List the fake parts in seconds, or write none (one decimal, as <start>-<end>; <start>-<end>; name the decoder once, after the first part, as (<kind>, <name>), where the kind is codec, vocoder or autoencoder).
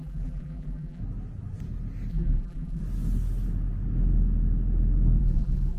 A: 0.0-1.0 (vocoder, BigVGAN v2); 2.1-2.8; 5.2-5.8